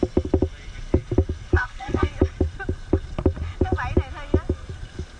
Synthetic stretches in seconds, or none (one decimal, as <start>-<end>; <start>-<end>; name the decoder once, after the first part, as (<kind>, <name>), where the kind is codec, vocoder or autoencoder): 1.5-2.1 (codec, SNAC)